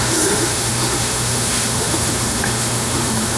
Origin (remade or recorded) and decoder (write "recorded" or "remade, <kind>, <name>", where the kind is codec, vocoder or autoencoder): remade, autoencoder, DAC-VAE